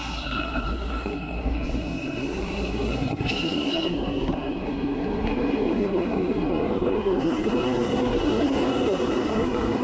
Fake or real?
fake